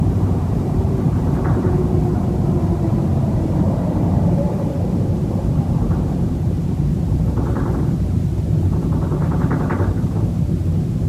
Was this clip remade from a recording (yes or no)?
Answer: yes